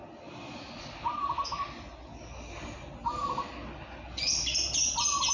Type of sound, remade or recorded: recorded